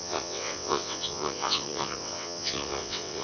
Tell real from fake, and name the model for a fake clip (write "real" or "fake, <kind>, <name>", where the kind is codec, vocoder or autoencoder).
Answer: fake, vocoder, WaveNeXt